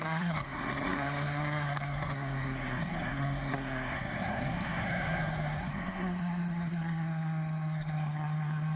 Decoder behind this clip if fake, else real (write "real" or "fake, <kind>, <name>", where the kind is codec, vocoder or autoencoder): fake, codec, SNAC